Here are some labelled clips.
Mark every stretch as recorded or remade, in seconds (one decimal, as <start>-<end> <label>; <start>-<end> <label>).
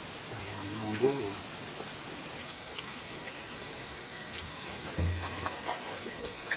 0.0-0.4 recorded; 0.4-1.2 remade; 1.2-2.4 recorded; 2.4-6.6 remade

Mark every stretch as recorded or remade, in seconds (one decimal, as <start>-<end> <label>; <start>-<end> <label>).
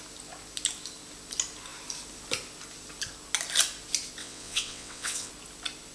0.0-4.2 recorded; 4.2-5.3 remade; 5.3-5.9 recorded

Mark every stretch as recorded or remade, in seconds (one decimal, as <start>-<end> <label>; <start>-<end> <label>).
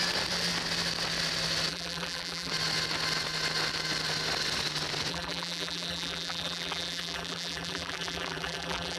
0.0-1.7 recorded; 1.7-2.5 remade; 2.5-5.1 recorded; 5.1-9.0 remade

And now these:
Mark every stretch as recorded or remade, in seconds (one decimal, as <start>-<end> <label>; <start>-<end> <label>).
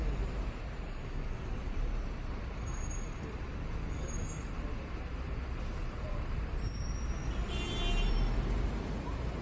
0.0-7.2 remade; 7.2-8.1 recorded; 8.1-9.4 remade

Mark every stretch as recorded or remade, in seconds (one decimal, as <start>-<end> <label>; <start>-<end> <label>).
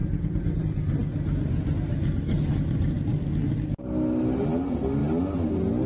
0.0-5.9 recorded